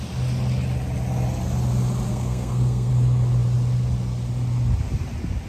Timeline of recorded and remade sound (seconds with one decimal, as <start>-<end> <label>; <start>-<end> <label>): 0.0-2.1 recorded; 2.1-2.9 remade; 2.9-5.5 recorded